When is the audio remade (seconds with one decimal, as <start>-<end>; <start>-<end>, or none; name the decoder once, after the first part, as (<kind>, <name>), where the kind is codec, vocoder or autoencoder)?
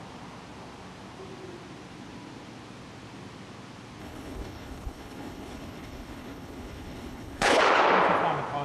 4.0-7.6 (codec, HILCodec)